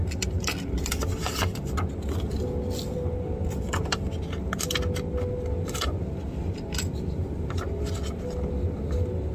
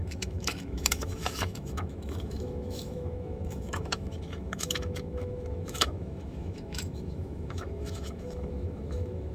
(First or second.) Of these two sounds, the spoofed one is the second